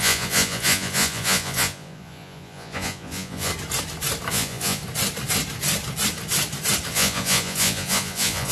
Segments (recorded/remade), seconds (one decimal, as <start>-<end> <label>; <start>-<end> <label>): 0.0-3.5 remade; 3.5-4.3 recorded; 4.3-4.8 remade; 4.8-6.9 recorded; 6.9-8.5 remade